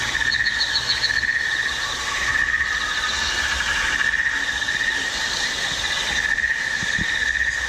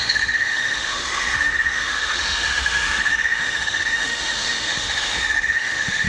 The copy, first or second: second